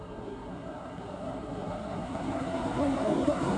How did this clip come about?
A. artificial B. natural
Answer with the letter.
A